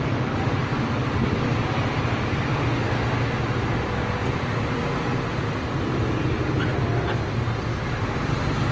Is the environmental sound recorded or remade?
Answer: recorded